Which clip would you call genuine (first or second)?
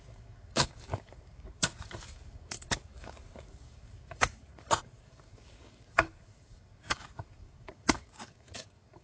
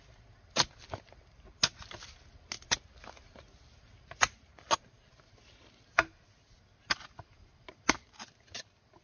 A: second